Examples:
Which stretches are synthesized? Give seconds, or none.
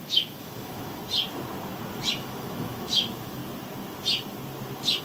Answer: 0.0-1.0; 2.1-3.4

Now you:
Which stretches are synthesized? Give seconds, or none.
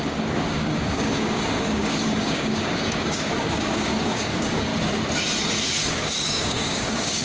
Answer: 0.0-4.7; 5.9-7.2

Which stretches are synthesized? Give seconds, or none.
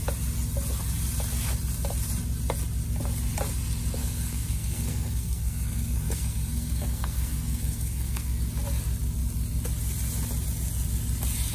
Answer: 4.0-8.4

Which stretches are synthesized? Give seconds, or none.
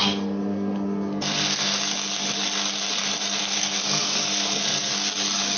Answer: 0.0-1.8; 3.4-4.9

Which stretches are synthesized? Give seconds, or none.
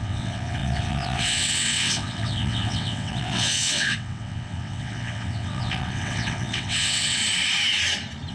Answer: 0.0-7.2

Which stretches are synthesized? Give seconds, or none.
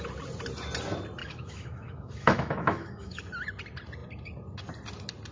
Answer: 1.2-3.2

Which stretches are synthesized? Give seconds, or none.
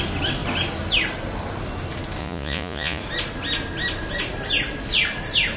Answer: 2.2-3.0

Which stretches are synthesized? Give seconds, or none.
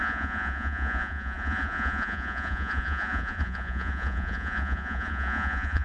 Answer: 0.0-5.8